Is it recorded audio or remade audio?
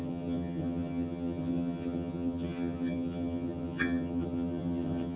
remade